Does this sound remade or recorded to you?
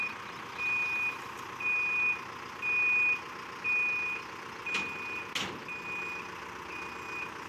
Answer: recorded